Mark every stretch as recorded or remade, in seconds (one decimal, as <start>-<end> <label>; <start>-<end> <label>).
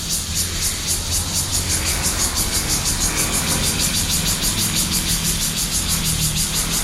0.0-1.5 recorded; 1.5-3.9 remade; 3.9-4.6 recorded; 4.6-6.0 remade; 6.0-6.8 recorded